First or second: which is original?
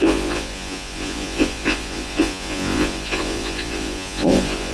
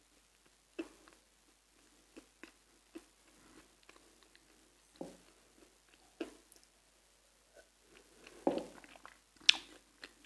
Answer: second